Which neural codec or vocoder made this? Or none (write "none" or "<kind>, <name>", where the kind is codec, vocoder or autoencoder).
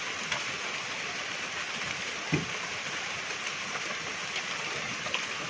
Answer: none